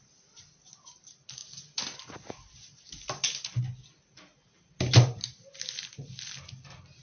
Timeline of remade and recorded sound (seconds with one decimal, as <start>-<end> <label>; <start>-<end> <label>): 0.0-7.0 recorded